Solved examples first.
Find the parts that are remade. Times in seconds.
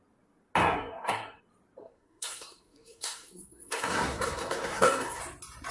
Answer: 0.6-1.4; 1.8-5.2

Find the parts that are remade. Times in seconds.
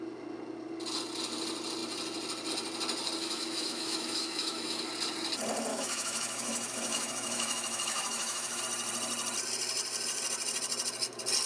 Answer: 3.2-4.9; 5.7-8.6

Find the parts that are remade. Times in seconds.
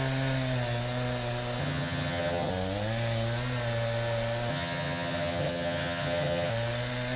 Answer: 1.6-2.5; 4.5-6.5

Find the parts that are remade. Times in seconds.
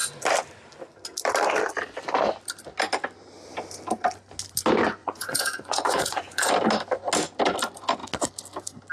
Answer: 5.0-6.5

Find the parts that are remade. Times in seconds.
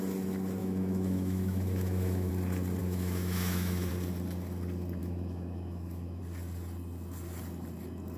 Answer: 0.6-2.3; 2.8-3.9; 5.0-6.2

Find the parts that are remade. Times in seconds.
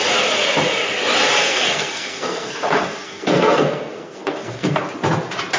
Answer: 1.4-4.8